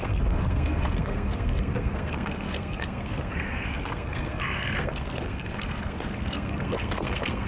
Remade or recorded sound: remade